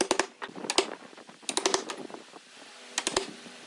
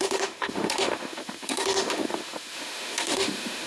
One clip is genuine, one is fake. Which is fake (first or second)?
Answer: second